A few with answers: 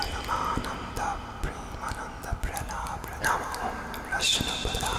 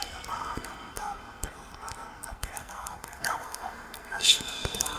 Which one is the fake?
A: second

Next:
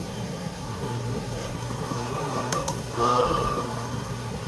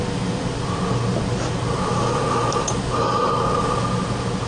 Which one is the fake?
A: first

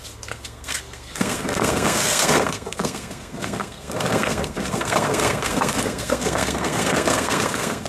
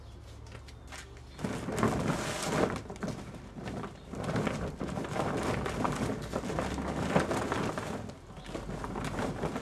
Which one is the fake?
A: first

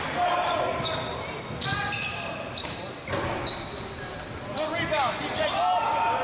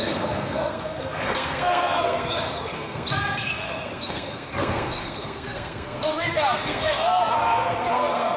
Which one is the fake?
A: second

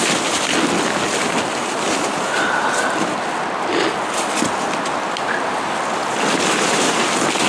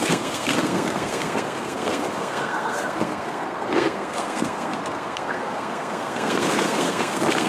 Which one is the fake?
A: second